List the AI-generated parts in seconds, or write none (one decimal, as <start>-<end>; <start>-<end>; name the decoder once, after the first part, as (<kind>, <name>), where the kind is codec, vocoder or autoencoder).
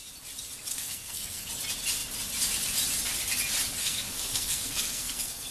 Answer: 0.7-1.5 (codec, SNAC); 3.8-5.5